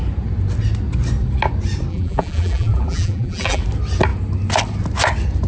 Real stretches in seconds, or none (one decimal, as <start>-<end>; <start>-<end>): 0.0-1.9; 3.6-5.5